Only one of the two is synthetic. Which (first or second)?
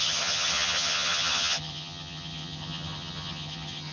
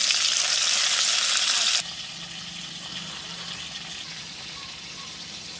first